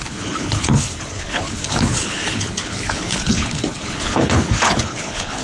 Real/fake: fake